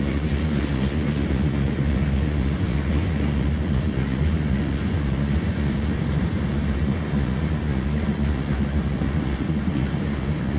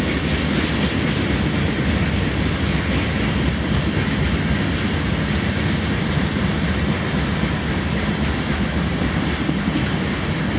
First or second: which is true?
second